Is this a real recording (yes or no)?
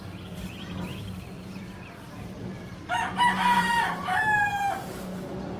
no